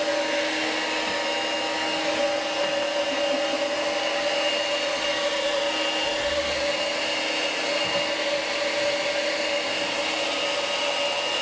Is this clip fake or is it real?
real